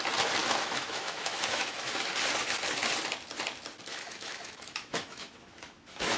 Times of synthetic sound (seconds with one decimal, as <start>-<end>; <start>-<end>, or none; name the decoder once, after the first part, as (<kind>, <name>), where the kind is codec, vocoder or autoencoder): 0.4-2.1 (autoencoder, DAC-VAE); 3.9-6.2